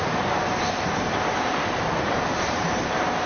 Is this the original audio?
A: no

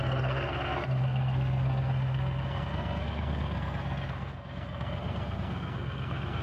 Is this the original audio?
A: no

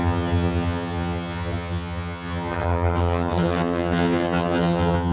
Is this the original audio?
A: no